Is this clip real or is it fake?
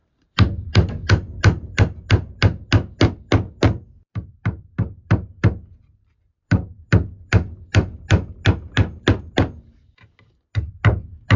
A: real